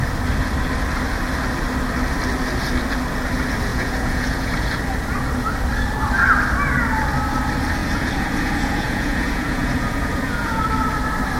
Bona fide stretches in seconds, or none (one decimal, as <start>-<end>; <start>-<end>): 0.0-3.7; 4.8-7.8; 10.6-11.4